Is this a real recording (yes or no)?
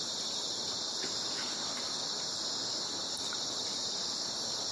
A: yes